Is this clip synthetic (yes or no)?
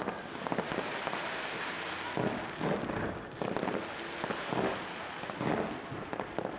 no